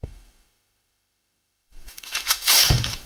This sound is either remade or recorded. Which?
remade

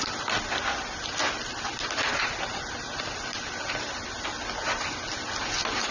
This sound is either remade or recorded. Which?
recorded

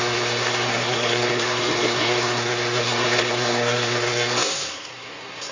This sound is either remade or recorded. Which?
remade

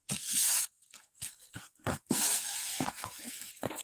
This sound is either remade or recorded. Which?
remade